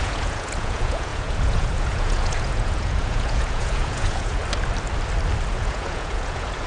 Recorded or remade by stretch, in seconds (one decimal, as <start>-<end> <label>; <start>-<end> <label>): 0.0-4.4 remade; 4.4-5.5 recorded; 5.5-6.7 remade